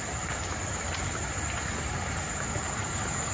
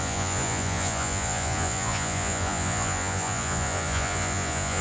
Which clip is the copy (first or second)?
second